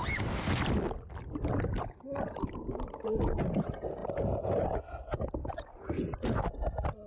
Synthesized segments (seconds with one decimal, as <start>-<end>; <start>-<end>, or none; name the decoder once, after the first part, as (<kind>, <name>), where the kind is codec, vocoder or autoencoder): none